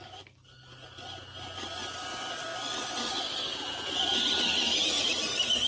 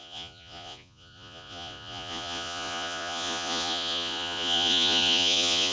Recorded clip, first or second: first